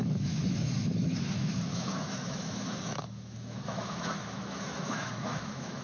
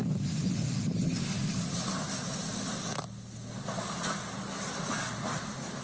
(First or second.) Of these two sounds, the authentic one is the second